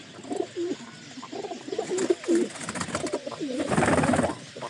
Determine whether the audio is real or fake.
real